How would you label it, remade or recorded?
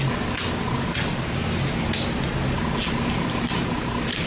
recorded